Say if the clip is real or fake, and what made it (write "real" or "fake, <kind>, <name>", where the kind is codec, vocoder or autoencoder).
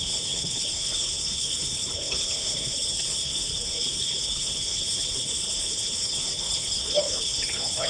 fake, codec, HILCodec